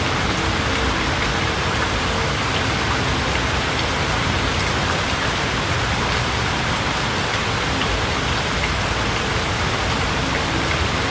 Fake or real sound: real